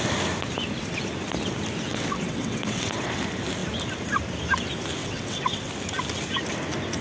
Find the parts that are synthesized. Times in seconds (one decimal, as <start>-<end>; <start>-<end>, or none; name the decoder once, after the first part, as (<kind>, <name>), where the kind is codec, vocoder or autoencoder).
1.9-3.2 (vocoder, WaveNeXt); 5.0-5.7